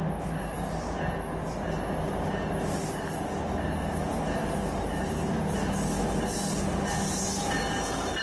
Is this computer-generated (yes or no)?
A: no